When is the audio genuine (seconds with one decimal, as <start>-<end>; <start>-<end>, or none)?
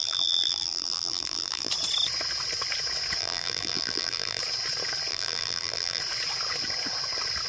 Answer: 1.7-3.2; 4.4-5.1; 6.0-7.5